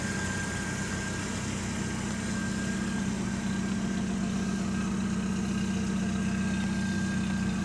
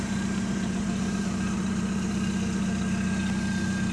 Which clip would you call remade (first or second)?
second